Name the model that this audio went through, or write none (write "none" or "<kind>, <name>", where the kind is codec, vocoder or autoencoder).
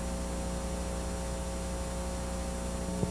none